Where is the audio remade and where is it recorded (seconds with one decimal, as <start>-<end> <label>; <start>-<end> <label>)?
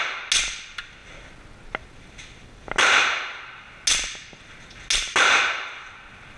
0.0-6.4 recorded